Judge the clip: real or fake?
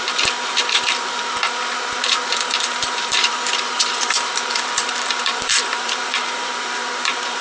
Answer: fake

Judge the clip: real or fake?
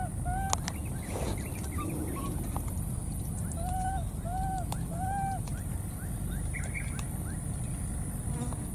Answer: real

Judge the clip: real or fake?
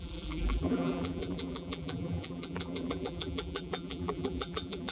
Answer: fake